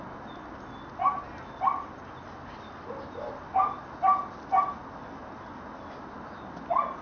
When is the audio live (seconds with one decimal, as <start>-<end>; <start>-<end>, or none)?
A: 0.0-7.0